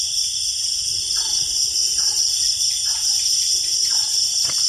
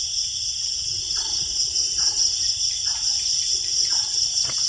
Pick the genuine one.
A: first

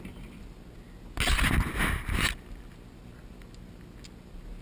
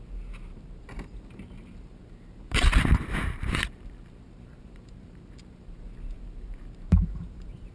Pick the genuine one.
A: first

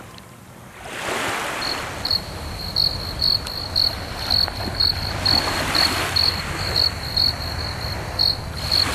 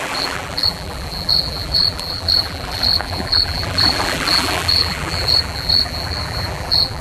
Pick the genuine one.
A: first